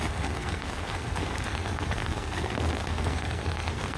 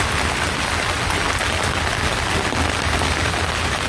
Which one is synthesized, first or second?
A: first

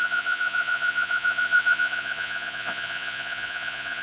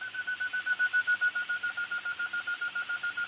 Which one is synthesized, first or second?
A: first